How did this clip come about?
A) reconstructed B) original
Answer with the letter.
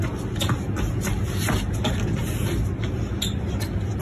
B